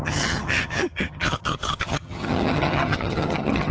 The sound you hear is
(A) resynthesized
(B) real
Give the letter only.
A